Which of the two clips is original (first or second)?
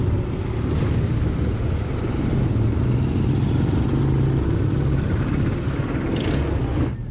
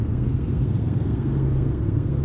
first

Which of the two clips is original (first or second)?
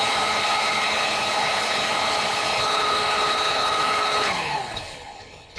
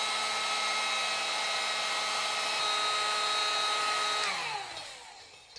second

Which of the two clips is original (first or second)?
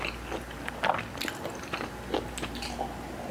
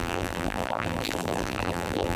first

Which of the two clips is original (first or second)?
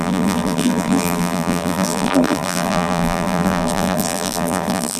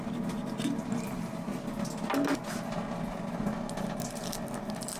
second